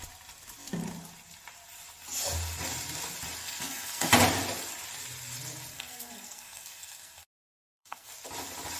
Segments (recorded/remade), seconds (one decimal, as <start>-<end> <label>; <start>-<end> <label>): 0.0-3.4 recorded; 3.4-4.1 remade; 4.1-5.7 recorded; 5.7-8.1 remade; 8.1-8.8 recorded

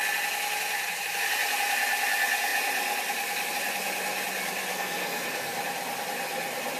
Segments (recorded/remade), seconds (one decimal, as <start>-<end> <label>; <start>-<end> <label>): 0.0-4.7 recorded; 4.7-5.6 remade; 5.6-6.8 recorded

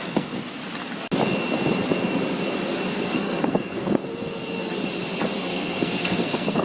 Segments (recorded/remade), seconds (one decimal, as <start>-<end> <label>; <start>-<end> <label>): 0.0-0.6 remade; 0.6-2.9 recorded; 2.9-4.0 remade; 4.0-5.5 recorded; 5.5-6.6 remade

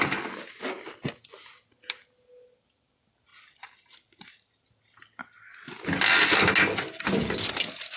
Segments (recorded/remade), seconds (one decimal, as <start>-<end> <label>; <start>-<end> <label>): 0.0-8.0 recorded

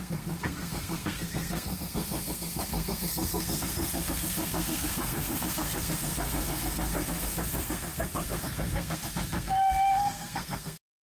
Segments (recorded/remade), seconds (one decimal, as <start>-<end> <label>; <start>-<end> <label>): 0.0-11.0 remade

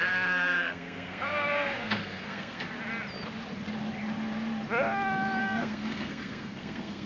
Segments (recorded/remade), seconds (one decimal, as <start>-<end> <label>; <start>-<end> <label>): 0.0-2.6 remade; 2.6-5.4 recorded; 5.4-7.1 remade

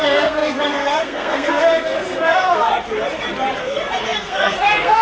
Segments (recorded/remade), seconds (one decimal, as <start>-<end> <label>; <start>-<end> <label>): 0.0-2.7 remade; 2.7-3.6 recorded; 3.6-5.0 remade